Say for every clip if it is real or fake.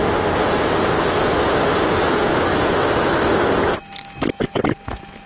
real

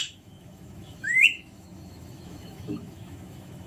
fake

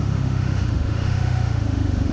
fake